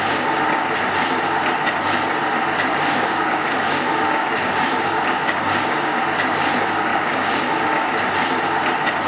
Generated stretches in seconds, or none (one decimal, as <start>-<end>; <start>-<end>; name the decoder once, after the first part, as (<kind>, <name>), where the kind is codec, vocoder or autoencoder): 2.7-6.0 (codec, DAC); 6.9-8.0